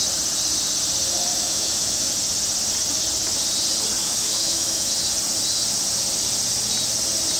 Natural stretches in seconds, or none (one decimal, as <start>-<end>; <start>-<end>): 0.0-1.3; 2.1-4.0; 4.9-7.4